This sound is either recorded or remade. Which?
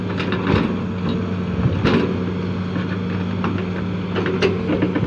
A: recorded